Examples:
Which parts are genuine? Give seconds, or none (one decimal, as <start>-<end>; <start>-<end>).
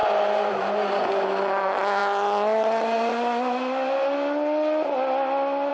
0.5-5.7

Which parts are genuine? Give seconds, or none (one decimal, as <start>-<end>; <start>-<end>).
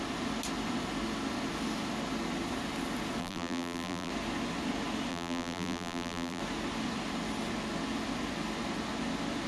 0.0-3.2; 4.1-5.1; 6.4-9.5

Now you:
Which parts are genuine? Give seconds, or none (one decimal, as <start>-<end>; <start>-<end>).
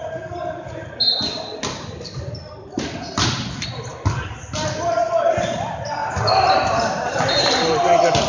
0.0-6.0; 7.7-8.3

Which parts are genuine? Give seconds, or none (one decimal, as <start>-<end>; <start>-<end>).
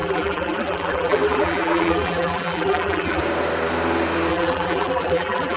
3.2-4.3